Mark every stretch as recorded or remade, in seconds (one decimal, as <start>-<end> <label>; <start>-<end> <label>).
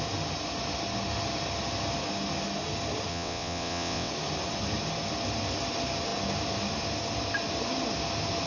0.0-3.1 recorded; 3.1-4.1 remade; 4.1-8.5 recorded